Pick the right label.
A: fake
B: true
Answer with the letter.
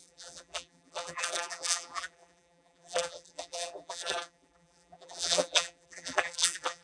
A